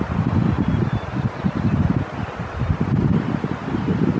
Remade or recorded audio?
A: recorded